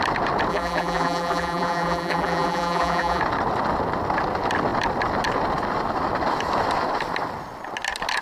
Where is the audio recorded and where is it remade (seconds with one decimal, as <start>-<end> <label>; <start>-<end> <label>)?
0.0-0.5 recorded; 0.5-3.2 remade; 3.2-8.2 recorded

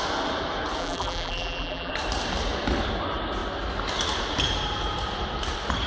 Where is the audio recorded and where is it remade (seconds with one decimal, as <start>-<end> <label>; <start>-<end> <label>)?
0.0-0.8 recorded; 0.8-1.9 remade; 1.9-5.9 recorded

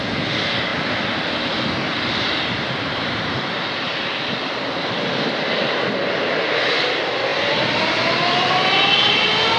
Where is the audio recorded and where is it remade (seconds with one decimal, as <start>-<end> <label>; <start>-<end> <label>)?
0.0-0.7 recorded; 0.7-5.8 remade; 5.8-7.3 recorded; 7.3-7.8 remade; 7.8-9.6 recorded